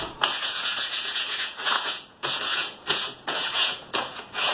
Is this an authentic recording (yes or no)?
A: no